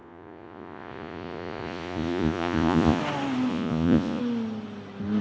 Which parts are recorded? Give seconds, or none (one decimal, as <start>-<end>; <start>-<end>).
3.0-3.5; 4.2-5.2